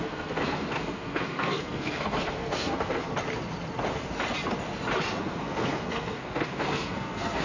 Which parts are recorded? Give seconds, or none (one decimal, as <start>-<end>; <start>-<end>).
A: 3.1-5.2